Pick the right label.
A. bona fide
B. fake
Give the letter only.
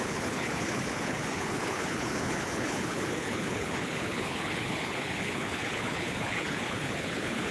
B